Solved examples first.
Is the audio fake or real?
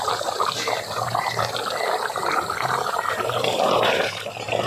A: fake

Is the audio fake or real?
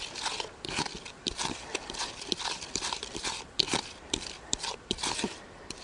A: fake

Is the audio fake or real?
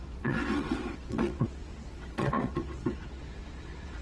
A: fake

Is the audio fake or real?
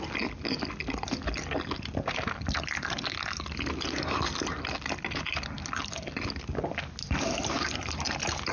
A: real